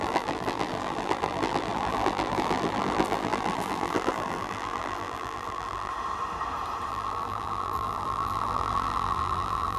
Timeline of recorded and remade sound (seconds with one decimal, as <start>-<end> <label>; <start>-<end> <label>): 0.0-5.9 remade; 5.9-6.9 recorded; 6.9-9.8 remade